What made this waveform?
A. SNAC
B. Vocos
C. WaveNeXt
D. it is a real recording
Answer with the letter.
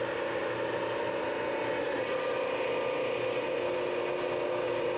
D